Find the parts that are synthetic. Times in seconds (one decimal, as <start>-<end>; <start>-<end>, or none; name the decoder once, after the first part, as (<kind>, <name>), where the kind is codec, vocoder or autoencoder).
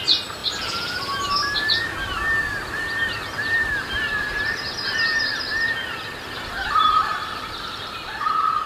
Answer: 0.4-1.1 (vocoder, BigVGAN v2); 3.4-4.3; 7.1-8.1